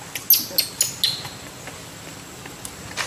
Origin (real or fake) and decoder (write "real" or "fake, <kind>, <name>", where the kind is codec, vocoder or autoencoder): real